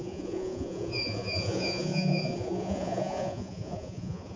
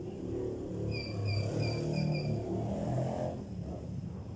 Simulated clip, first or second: first